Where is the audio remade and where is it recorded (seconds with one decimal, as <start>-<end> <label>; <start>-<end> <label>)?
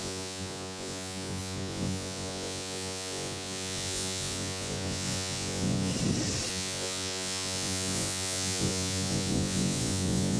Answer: 0.0-5.9 remade; 5.9-6.5 recorded; 6.5-10.4 remade